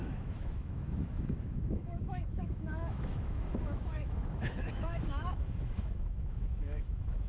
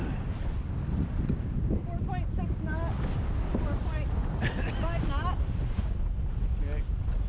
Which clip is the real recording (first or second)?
second